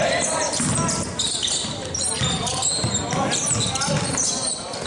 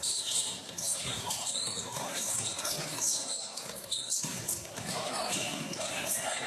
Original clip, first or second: first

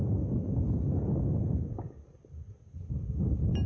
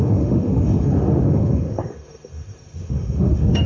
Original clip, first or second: first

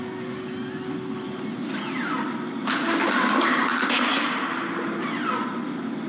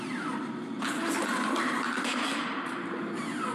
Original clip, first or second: first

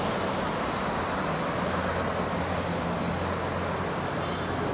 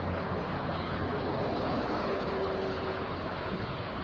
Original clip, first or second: first